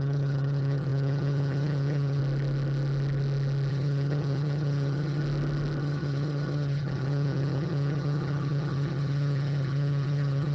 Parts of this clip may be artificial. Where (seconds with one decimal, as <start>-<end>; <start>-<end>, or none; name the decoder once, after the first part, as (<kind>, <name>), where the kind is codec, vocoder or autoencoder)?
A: 0.0-2.2 (vocoder, HiFi-GAN); 3.7-5.2; 5.8-10.5